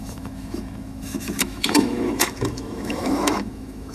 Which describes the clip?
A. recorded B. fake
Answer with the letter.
B